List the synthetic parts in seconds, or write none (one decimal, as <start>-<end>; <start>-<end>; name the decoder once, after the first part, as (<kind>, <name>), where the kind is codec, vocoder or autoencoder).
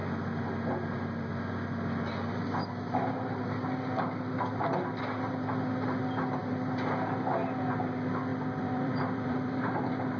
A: 8.3-9.6 (vocoder, BigVGAN v2)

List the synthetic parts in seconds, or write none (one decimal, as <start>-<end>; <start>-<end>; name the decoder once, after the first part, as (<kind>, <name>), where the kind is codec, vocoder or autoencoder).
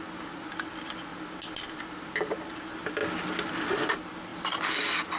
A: 0.0-1.1 (vocoder, BigVGAN v2); 1.8-3.0; 3.9-5.2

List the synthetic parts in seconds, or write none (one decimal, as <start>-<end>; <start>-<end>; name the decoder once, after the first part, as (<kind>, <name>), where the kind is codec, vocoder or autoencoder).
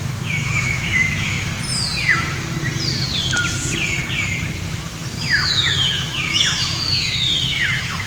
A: 0.0-1.5 (autoencoder, DAC-VAE); 5.2-8.1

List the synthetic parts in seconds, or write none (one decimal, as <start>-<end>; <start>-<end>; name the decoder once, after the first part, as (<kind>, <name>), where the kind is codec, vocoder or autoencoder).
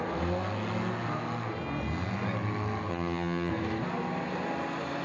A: 2.9-3.5 (vocoder, HiFi-GAN)